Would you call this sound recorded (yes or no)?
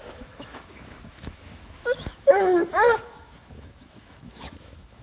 no